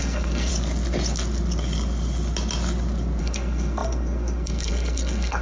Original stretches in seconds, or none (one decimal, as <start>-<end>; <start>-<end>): 0.5-3.2